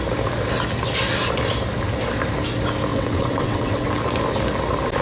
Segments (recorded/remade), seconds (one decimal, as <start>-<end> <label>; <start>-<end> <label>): 0.0-2.9 recorded; 2.9-3.9 remade; 3.9-5.0 recorded